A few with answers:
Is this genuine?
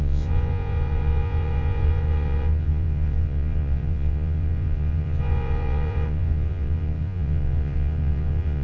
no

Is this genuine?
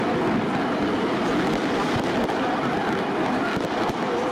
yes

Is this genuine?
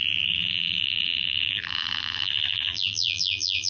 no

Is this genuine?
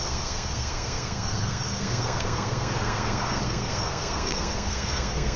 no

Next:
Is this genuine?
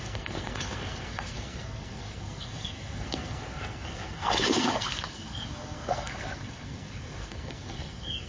no